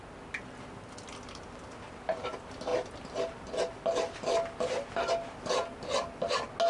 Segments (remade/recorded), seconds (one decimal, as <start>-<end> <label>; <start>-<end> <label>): 0.0-6.7 recorded